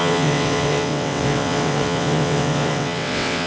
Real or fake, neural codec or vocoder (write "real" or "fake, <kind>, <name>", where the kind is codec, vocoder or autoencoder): fake, vocoder, WaveNeXt